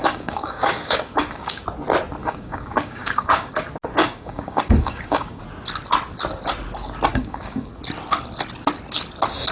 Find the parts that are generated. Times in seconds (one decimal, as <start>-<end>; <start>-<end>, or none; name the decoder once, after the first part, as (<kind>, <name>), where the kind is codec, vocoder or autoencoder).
0.0-1.6 (codec, DAC); 2.2-3.5; 4.0-5.4; 7.1-7.7